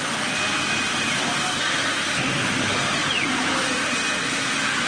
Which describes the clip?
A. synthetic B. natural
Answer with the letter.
B